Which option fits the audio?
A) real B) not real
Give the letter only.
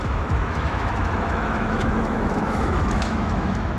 B